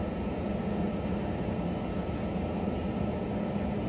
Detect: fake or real real